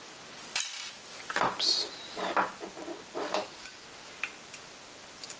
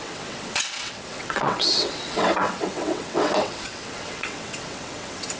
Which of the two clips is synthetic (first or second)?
second